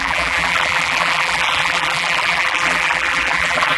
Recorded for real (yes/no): no